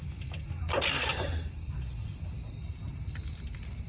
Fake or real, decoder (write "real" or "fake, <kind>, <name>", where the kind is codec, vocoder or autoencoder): real